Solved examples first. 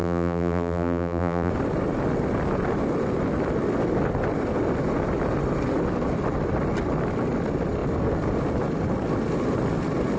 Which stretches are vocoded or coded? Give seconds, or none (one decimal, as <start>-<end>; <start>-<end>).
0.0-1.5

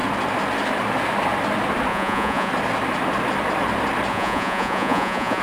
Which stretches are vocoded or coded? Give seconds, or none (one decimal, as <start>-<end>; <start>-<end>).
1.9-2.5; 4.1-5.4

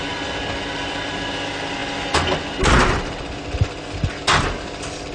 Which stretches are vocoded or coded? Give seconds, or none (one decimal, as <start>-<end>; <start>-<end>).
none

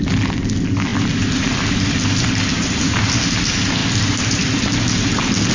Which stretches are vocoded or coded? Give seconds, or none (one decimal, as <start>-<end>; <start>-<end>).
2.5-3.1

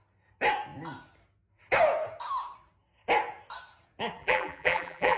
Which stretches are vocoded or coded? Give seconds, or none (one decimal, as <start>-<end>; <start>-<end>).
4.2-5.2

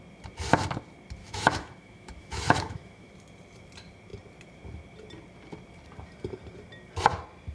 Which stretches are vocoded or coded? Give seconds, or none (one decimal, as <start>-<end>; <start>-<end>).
1.2-3.1

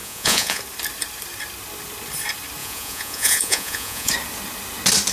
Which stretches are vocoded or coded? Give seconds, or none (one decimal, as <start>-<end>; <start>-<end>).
0.0-0.6; 2.6-4.1

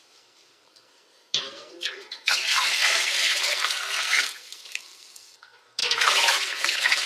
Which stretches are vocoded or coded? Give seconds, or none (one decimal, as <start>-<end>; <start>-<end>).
0.0-7.1